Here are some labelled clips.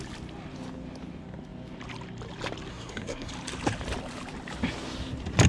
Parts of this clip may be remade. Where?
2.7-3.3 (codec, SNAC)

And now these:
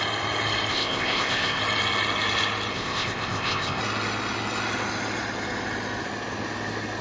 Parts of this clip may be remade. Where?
0.7-1.6 (codec, ZipCodec); 2.7-3.8

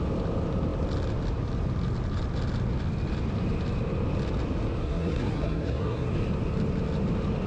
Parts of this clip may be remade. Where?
4.8-6.1 (codec, SNAC)

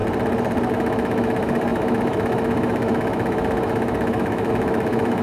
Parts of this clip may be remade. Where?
0.7-5.2 (autoencoder, DAC-VAE)

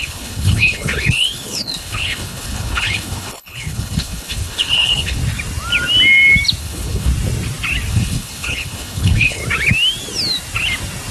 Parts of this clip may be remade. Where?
0.0-5.2 (codec, HILCodec); 6.6-7.1; 7.9-9.4

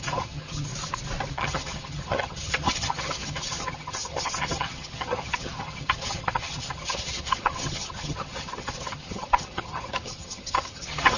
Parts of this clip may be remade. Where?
0.0-0.7 (vocoder, HiFi-GAN); 1.3-11.2

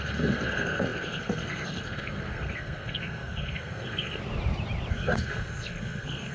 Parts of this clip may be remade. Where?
0.0-4.2 (codec, SNAC); 4.9-6.3